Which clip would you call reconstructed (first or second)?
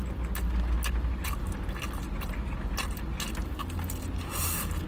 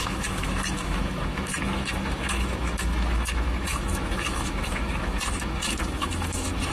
second